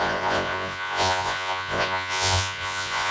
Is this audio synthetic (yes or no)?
yes